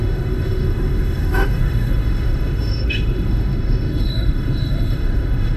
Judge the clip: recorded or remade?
remade